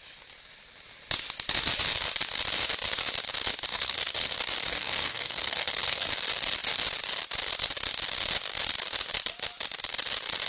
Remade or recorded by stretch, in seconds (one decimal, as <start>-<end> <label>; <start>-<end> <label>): 0.0-3.7 recorded; 3.7-4.3 remade; 4.3-4.7 recorded; 4.7-6.1 remade; 6.1-10.5 recorded